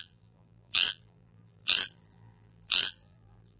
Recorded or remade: remade